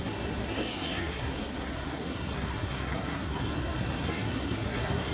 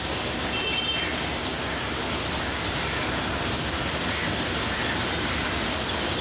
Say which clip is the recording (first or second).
second